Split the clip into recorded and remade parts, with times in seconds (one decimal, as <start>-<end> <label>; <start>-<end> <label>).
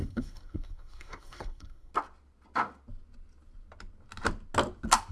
0.0-1.9 remade; 1.9-5.1 recorded